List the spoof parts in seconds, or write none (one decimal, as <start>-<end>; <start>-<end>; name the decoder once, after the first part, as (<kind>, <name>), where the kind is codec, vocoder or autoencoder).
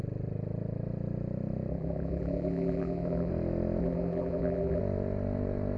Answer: 1.7-3.3 (vocoder, BigVGAN v2); 3.8-4.8